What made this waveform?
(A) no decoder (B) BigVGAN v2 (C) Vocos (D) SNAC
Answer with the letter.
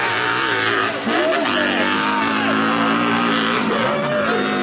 A